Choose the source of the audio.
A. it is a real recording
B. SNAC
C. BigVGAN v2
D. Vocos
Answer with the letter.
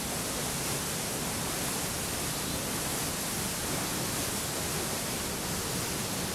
A